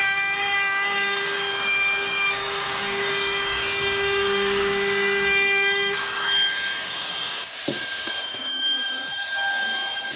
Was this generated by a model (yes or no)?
yes